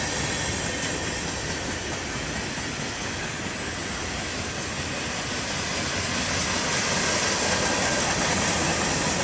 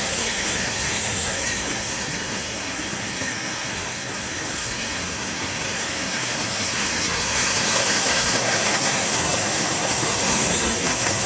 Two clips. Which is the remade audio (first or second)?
second